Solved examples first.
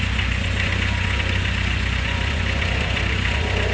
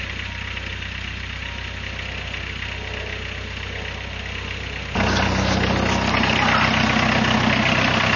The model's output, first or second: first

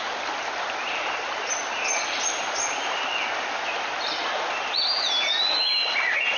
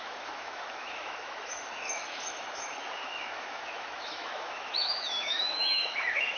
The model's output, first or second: second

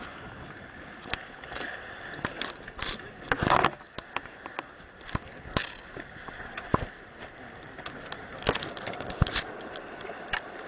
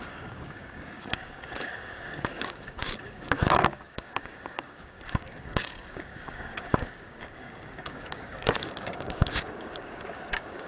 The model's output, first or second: second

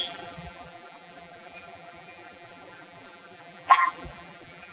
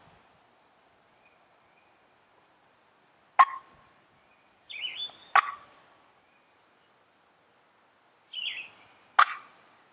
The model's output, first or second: first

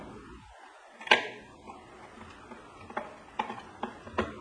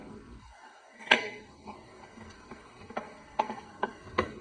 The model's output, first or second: second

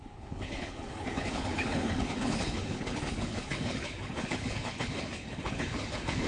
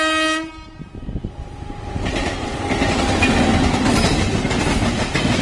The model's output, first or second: first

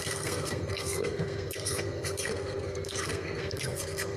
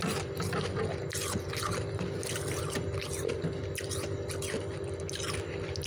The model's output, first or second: first